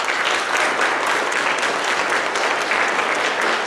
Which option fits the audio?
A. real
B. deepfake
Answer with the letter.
A